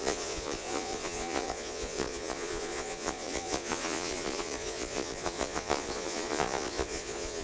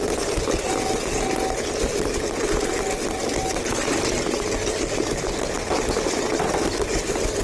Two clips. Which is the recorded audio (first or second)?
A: second